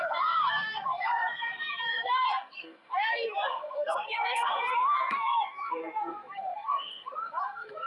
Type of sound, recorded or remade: remade